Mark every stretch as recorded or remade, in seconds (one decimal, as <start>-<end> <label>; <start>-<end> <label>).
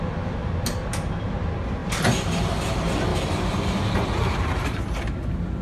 0.0-3.1 recorded; 3.1-5.6 remade